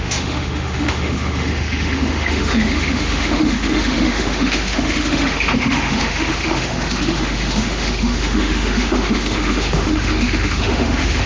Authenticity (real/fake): fake